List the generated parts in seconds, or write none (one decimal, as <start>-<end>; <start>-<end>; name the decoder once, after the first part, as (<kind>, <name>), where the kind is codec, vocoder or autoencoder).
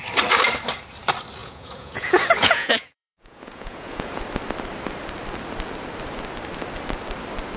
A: 1.4-4.2 (vocoder, Vocos)